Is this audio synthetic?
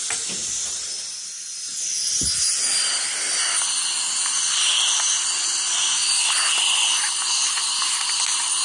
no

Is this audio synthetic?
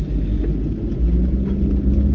no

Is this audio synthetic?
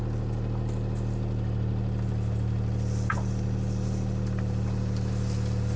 no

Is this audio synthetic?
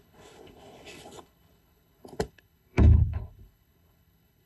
yes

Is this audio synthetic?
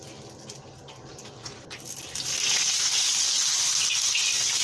no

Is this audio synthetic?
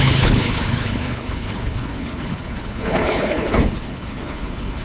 yes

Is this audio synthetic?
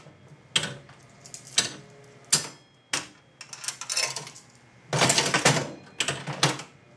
no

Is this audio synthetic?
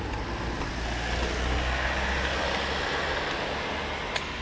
no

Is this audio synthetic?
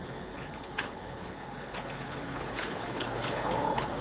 yes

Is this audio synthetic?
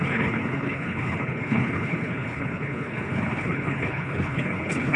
yes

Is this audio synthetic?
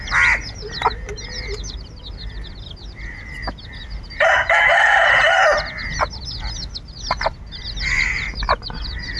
no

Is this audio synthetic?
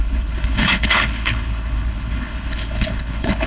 yes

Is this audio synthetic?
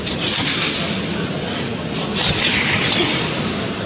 no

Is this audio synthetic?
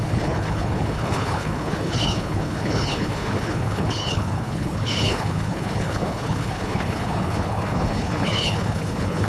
yes